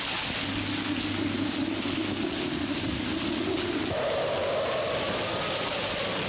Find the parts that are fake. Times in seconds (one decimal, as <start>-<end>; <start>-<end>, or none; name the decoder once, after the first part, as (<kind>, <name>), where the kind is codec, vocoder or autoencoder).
none